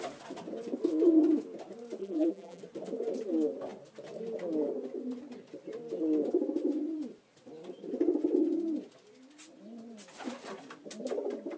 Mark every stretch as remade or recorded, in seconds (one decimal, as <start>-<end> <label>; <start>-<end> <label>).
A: 0.0-2.0 recorded; 2.0-2.6 remade; 2.6-11.6 recorded